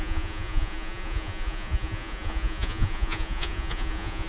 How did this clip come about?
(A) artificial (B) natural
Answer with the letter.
A